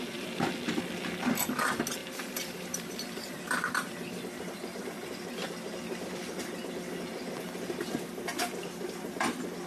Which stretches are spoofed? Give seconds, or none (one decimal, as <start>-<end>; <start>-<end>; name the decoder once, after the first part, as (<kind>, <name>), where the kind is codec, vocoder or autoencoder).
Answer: 2.0-3.4 (vocoder, BigVGAN v2)